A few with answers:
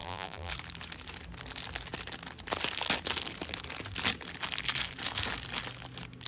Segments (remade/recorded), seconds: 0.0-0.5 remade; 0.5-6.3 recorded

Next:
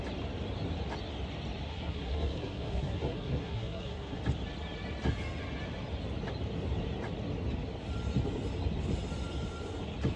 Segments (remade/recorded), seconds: 0.0-1.7 recorded; 1.7-4.2 remade; 4.2-10.2 recorded

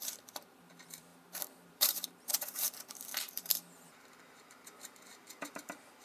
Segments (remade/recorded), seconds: 0.0-6.0 remade